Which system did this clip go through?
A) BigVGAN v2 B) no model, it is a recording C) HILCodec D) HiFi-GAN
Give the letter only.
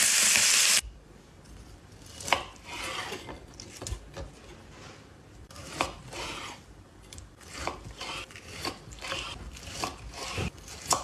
A